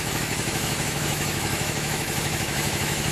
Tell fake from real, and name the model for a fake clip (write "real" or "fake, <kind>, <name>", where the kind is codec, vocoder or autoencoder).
fake, autoencoder, DAC-VAE